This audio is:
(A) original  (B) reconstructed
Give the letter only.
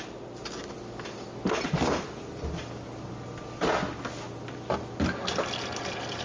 A